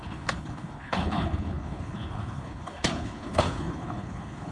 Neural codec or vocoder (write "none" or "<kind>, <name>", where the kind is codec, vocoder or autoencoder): codec, HILCodec